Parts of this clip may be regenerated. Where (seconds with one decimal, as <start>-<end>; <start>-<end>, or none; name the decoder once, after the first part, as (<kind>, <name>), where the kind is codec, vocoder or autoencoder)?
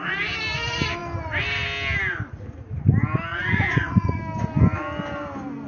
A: 3.3-4.2 (vocoder, Vocos)